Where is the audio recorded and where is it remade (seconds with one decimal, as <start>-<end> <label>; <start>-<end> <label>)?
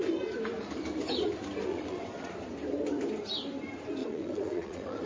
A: 0.0-1.7 recorded; 1.7-2.3 remade; 2.3-4.0 recorded; 4.0-5.1 remade